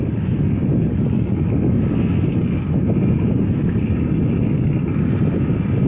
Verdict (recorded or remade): recorded